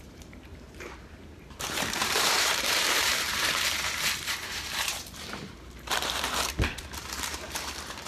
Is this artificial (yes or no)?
yes